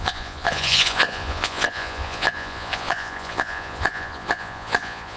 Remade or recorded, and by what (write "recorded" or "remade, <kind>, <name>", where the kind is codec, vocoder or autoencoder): remade, vocoder, Vocos